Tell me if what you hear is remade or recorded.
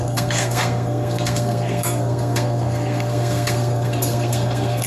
remade